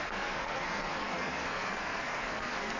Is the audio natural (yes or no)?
no